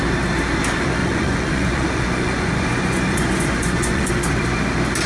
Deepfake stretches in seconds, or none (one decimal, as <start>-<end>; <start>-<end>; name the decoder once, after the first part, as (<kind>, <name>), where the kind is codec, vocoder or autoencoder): 1.0-4.1 (vocoder, Vocos)